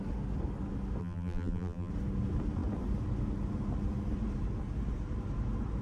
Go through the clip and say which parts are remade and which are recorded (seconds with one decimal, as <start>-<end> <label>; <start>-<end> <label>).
0.0-1.0 recorded; 1.0-1.9 remade; 1.9-5.8 recorded

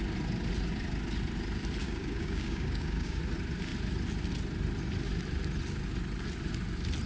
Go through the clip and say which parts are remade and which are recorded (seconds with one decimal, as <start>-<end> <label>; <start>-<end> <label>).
0.0-1.8 recorded; 1.8-3.2 remade; 3.2-7.1 recorded

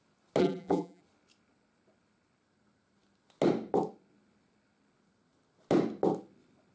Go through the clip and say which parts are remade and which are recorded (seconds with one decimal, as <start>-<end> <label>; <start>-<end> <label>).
0.0-0.4 recorded; 0.4-1.0 remade; 1.0-6.7 recorded

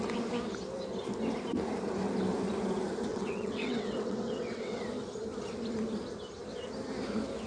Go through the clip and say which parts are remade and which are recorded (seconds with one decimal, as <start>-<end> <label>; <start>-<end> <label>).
0.0-3.1 recorded; 3.1-4.8 remade; 4.8-7.5 recorded

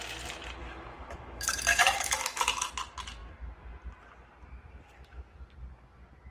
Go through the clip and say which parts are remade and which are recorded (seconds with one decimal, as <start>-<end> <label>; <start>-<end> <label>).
0.0-0.6 recorded; 0.6-2.7 remade; 2.7-6.3 recorded

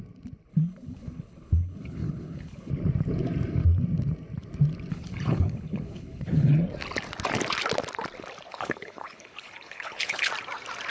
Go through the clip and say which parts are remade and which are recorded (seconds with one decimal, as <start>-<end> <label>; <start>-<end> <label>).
0.0-0.5 recorded; 0.5-2.7 remade; 2.7-4.9 recorded; 4.9-6.5 remade; 6.5-8.5 recorded; 8.5-10.3 remade; 10.3-10.9 recorded